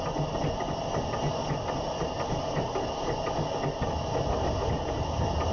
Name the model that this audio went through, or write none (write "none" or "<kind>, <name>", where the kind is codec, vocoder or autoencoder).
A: none